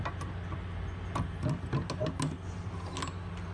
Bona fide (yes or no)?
yes